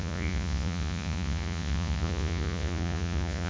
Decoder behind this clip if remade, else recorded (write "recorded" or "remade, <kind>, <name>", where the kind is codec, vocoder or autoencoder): remade, vocoder, Vocos